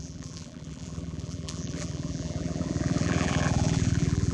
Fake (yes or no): yes